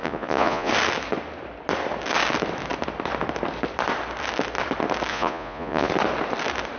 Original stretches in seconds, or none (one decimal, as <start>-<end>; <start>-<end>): 0.7-5.1; 5.9-6.8